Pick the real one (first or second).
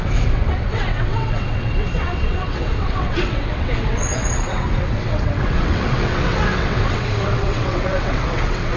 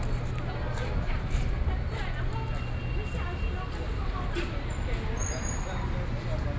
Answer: second